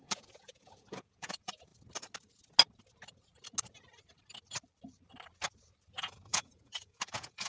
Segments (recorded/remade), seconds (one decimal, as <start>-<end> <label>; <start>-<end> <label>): 0.0-1.7 remade; 1.7-5.9 recorded; 5.9-7.5 remade